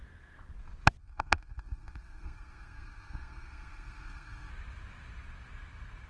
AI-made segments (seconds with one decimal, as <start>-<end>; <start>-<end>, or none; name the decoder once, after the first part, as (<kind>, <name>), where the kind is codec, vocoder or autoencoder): 1.0-4.5 (codec, SNAC)

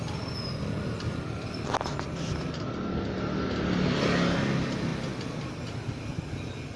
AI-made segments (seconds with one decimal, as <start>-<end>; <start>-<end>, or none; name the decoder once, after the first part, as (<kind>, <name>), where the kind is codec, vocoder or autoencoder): none

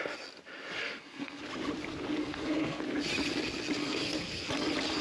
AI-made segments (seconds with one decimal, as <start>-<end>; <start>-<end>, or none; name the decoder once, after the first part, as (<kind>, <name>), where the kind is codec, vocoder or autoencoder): 0.8-1.4 (codec, SNAC); 2.2-2.8; 3.8-4.5

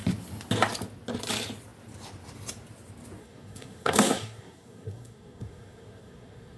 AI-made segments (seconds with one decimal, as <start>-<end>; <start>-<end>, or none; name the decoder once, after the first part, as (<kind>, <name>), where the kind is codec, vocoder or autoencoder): 3.2-6.6 (codec, SNAC)

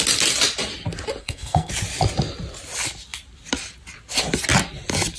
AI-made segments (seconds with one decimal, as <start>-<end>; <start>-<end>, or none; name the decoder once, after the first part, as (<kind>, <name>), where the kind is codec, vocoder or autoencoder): 1.2-1.7 (codec, SNAC)

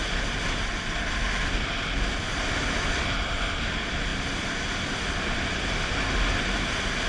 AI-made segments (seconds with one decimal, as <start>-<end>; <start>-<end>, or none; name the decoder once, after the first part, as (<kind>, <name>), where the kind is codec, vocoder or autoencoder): none

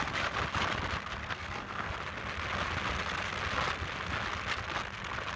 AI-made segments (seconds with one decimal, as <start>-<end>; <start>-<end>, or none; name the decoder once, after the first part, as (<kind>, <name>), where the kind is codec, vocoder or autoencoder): 1.2-1.9 (codec, SNAC)